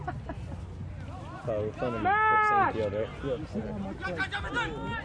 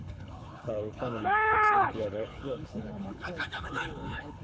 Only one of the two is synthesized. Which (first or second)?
second